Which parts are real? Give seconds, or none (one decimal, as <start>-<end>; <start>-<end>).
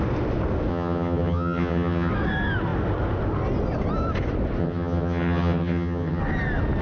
0.0-0.7; 2.1-4.6; 6.2-6.8